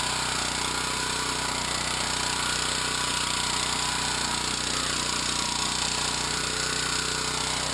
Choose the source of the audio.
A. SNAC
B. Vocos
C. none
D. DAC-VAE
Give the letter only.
C